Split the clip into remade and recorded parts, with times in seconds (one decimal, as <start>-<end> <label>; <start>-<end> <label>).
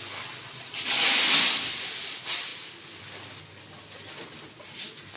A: 0.0-5.2 recorded